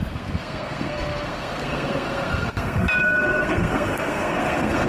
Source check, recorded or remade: remade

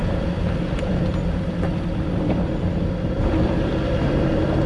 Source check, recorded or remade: remade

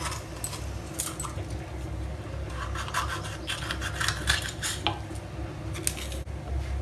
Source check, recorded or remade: recorded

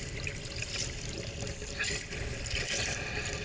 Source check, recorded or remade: recorded